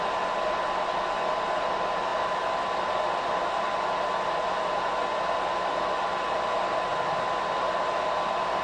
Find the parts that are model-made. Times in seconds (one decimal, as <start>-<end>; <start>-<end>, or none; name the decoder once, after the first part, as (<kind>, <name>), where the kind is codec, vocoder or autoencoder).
none

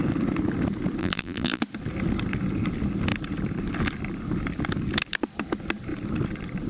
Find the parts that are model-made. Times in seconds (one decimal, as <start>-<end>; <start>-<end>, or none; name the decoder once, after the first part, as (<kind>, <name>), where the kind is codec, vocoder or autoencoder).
1.0-1.6 (vocoder, BigVGAN v2)

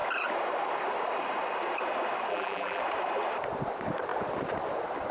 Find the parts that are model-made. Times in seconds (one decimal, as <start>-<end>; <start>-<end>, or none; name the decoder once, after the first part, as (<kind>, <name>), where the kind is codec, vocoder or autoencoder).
2.3-2.8 (vocoder, BigVGAN v2)

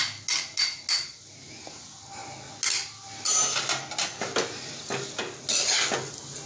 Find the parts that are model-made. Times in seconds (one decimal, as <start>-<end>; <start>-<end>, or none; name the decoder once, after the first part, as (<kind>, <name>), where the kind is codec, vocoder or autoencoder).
none